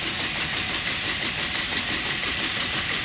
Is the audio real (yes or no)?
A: yes